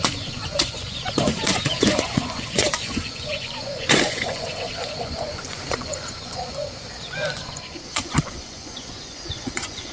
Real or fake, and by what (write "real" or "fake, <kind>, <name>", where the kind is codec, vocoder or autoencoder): fake, vocoder, Vocos